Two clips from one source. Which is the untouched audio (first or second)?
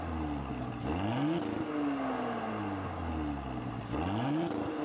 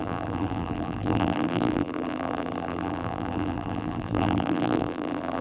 first